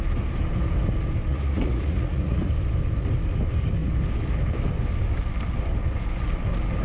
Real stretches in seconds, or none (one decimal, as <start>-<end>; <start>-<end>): 0.0-1.3; 2.5-6.8